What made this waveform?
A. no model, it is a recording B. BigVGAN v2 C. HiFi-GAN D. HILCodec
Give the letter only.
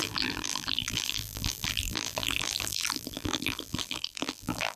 B